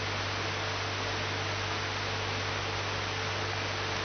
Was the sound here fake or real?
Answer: real